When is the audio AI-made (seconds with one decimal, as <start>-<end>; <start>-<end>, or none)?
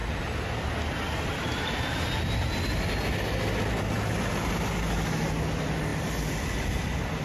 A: none